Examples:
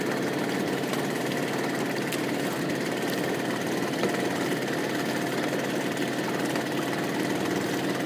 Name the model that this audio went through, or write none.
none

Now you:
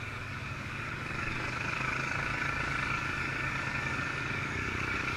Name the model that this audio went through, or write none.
codec, DAC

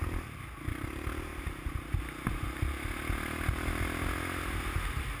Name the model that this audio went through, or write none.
none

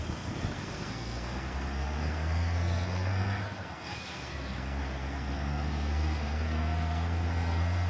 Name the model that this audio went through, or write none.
codec, SNAC